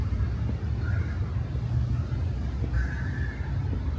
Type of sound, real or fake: real